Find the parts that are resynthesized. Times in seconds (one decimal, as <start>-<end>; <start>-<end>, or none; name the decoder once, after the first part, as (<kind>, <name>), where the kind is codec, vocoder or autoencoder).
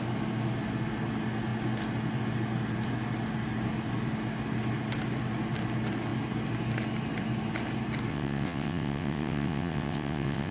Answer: 8.1-10.5 (vocoder, WaveNeXt)